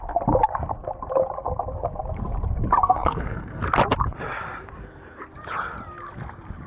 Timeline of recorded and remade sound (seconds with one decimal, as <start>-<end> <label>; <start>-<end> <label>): 0.0-2.8 recorded; 2.8-3.6 remade; 3.6-6.7 recorded